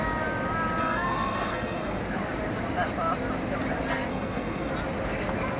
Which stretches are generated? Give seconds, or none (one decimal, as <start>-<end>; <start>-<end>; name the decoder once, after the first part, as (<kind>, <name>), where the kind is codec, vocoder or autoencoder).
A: 0.8-2.0 (codec, SNAC); 4.1-4.7